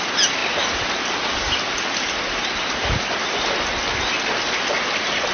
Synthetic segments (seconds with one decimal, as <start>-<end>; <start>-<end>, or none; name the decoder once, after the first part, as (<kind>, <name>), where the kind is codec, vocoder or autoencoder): none